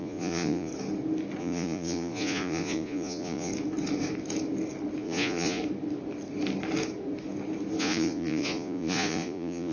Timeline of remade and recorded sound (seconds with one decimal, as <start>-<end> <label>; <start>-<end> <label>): 0.0-0.7 remade; 0.7-1.4 recorded; 1.4-3.5 remade; 3.5-5.0 recorded; 5.0-5.6 remade; 5.6-7.8 recorded; 7.8-9.7 remade